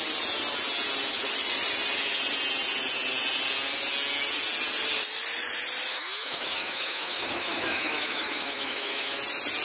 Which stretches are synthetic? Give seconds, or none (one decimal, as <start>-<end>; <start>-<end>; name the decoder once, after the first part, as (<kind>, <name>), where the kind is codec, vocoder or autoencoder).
5.9-9.2 (autoencoder, DAC-VAE)